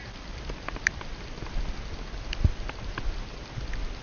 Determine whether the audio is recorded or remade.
recorded